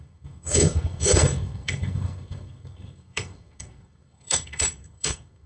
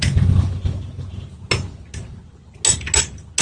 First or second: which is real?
second